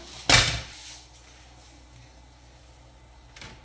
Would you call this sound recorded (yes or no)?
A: yes